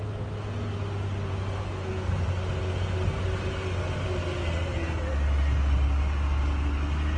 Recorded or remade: recorded